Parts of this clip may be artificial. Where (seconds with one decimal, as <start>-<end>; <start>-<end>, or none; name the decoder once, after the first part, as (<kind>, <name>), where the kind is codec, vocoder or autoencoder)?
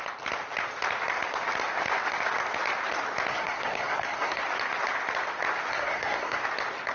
3.3-4.4 (codec, SNAC); 5.7-6.4